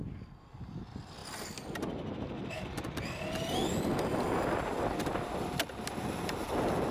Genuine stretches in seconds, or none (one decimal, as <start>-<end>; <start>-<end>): 0.0-6.9